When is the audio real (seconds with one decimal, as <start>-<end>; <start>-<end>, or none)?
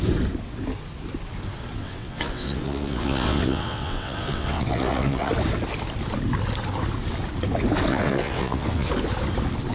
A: 0.0-1.8; 5.3-7.9; 8.9-9.7